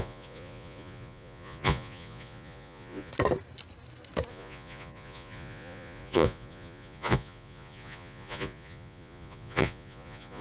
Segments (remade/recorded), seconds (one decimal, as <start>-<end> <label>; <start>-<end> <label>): 0.0-3.1 remade; 3.1-4.3 recorded; 4.3-10.4 remade

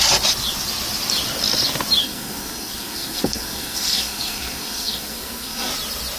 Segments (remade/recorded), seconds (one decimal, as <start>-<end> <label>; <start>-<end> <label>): 0.0-2.0 recorded; 2.0-5.7 remade; 5.7-6.2 recorded

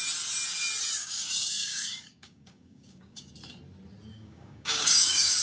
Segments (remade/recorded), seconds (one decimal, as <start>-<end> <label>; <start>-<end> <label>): 0.0-1.0 recorded; 1.0-3.3 remade; 3.3-4.1 recorded; 4.1-5.4 remade

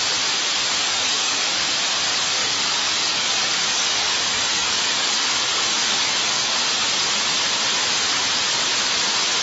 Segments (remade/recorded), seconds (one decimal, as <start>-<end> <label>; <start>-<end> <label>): 0.0-0.8 recorded; 0.8-1.6 remade; 1.6-2.4 recorded; 2.4-6.6 remade; 6.6-9.4 recorded

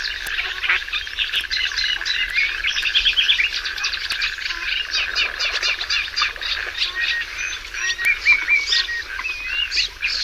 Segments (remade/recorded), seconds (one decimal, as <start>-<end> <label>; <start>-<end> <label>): 0.0-10.2 recorded

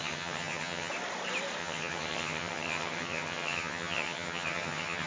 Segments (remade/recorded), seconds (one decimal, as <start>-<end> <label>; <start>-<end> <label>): 0.0-0.9 remade; 0.9-1.6 recorded; 1.6-5.1 remade

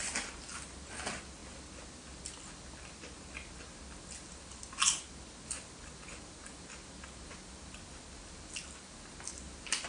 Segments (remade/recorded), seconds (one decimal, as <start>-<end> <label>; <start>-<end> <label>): 0.0-9.9 recorded